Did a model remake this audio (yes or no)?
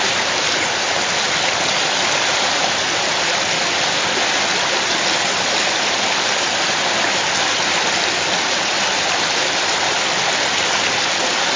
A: no